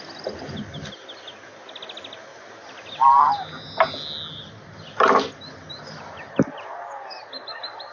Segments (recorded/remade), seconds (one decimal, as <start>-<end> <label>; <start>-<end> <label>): 0.0-7.9 recorded